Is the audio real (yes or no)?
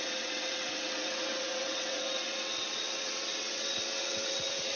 no